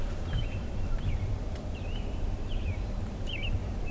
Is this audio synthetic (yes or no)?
yes